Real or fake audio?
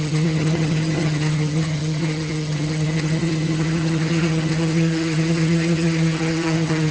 fake